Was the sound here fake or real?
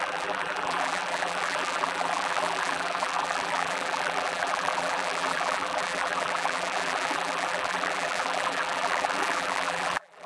fake